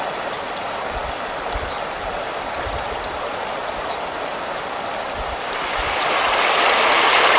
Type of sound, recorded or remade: recorded